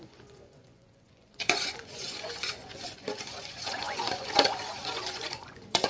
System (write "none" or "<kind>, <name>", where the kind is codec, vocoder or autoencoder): vocoder, Vocos